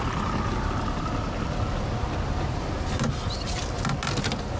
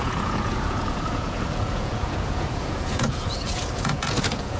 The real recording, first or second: first